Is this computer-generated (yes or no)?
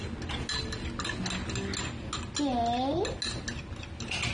no